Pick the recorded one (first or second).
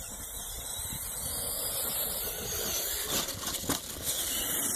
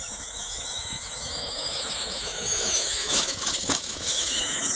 first